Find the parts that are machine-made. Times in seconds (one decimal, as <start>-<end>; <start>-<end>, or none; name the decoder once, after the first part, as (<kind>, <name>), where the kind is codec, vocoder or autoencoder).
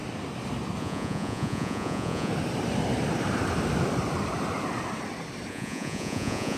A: 0.8-2.3 (vocoder, Vocos); 5.5-6.6